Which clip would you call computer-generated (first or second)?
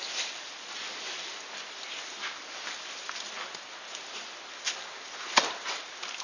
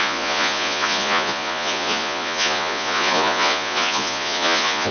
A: second